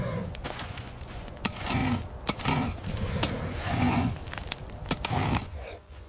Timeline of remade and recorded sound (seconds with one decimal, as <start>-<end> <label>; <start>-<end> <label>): 0.0-1.8 remade; 1.8-3.5 recorded; 3.5-4.2 remade; 4.2-5.4 recorded; 5.4-6.1 remade